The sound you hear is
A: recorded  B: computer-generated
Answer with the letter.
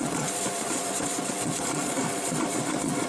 B